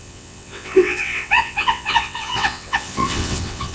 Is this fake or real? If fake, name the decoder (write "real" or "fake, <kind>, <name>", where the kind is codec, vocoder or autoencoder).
fake, vocoder, WaveNeXt